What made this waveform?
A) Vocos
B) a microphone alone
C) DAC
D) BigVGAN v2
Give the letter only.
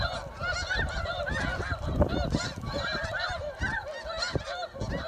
D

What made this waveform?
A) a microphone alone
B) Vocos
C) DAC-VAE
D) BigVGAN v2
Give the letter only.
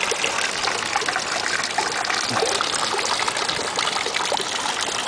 A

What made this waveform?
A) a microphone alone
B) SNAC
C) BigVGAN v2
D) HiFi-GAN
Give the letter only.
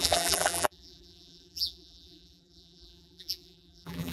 C